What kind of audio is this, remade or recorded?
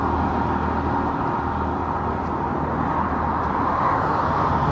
recorded